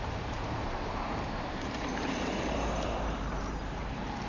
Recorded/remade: remade